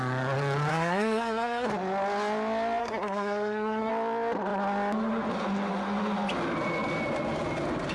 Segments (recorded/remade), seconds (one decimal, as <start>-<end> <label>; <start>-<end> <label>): 0.0-0.7 recorded; 0.7-1.7 remade; 1.7-2.8 recorded; 2.8-3.9 remade; 3.9-7.9 recorded